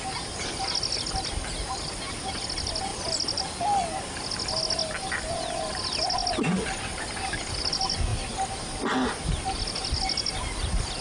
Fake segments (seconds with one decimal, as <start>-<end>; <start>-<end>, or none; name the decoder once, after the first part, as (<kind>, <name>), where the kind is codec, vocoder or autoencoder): 2.9-3.6 (vocoder, BigVGAN v2)